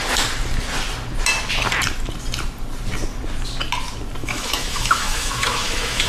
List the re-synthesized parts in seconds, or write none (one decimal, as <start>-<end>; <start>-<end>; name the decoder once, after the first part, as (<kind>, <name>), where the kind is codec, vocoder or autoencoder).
4.2-6.1 (autoencoder, DAC-VAE)